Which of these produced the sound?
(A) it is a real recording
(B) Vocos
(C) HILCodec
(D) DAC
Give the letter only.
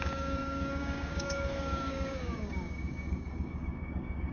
D